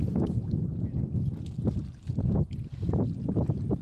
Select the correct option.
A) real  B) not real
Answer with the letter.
A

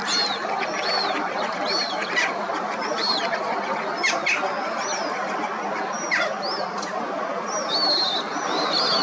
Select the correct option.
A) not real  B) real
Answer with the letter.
B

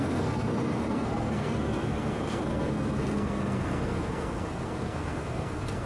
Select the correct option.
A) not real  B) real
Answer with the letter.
A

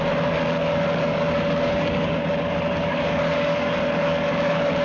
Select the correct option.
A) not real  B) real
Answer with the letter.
A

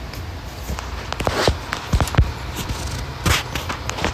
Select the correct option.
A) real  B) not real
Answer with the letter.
A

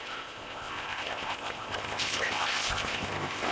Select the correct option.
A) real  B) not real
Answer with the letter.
B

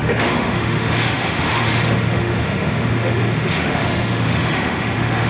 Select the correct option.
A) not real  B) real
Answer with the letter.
A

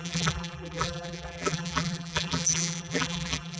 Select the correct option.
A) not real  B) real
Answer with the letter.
A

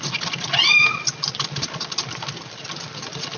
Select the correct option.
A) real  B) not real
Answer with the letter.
A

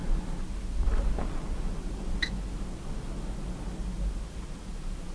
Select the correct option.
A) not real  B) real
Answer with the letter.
B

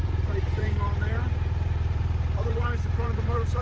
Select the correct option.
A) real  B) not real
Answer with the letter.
B